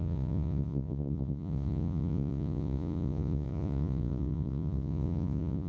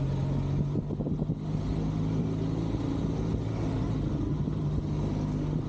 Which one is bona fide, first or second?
second